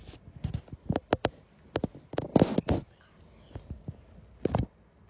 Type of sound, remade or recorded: recorded